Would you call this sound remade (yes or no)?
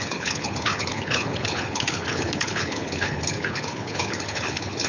yes